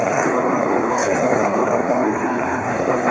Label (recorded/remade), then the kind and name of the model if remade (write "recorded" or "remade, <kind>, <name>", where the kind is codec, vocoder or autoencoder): remade, codec, SNAC